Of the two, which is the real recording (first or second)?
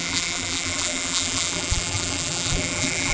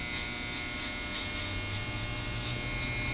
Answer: second